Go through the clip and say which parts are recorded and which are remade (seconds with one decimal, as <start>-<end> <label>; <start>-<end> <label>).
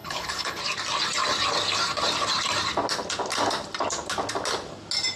0.0-0.6 remade; 0.6-5.2 recorded